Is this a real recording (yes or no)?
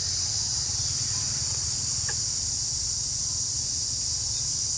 yes